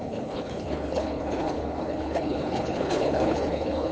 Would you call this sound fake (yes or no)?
yes